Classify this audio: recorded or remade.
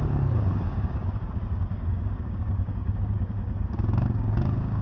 remade